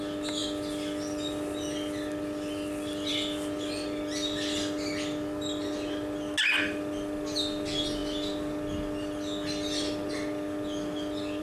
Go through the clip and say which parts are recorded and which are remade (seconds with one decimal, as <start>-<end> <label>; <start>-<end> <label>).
0.0-11.4 recorded